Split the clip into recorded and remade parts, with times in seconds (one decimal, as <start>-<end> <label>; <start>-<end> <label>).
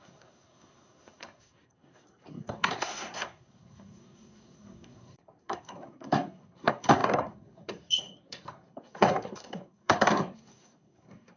0.0-11.4 remade